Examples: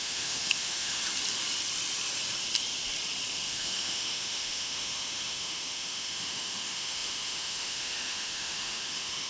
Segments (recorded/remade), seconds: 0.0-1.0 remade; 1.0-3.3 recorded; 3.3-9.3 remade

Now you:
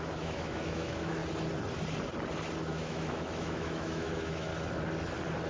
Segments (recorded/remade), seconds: 0.0-1.2 remade; 1.2-2.7 recorded; 2.7-4.5 remade; 4.5-5.5 recorded

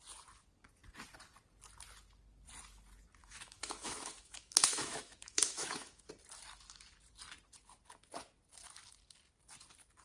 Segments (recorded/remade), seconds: 0.0-3.2 recorded; 3.2-6.1 remade; 6.1-10.0 recorded

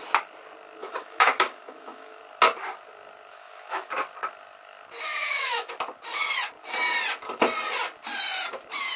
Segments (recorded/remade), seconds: 0.0-0.8 recorded; 0.8-2.2 remade; 2.2-3.3 recorded; 3.3-3.9 remade; 3.9-5.1 recorded; 5.1-5.7 remade; 5.7-9.0 recorded

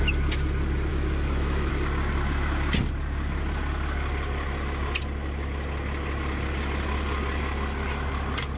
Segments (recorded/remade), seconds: 0.0-0.9 recorded; 0.9-1.7 remade; 1.7-8.6 recorded

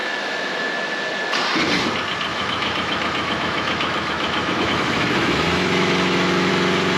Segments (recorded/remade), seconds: 0.0-0.7 remade; 0.7-2.3 recorded; 2.3-6.5 remade; 6.5-7.0 recorded

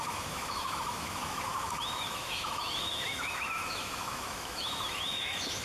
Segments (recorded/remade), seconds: 0.0-5.6 remade

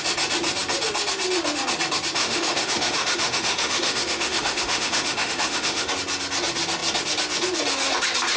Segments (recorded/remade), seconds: 0.0-2.2 recorded; 2.2-5.9 remade; 5.9-8.4 recorded